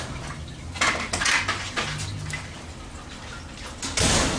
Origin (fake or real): real